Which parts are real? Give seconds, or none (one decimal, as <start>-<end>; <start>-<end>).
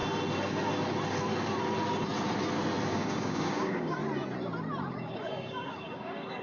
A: 0.0-2.9; 4.0-4.9